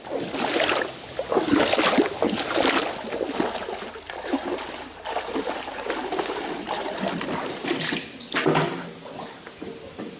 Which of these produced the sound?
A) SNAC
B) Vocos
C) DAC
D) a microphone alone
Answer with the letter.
D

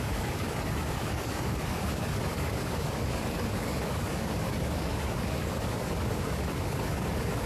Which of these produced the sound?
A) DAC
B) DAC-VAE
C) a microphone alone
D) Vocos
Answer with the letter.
A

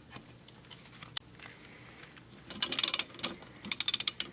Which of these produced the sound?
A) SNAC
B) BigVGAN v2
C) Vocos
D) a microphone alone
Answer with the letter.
D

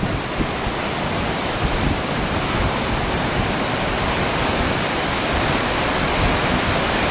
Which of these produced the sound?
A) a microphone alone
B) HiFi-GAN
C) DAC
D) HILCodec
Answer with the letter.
A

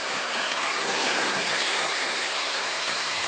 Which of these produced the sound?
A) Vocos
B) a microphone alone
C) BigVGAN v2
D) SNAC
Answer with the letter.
D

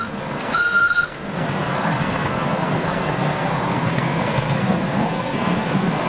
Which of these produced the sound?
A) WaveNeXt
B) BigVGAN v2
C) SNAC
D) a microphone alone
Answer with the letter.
C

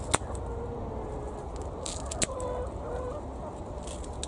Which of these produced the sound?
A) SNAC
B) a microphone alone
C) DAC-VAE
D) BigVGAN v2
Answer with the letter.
B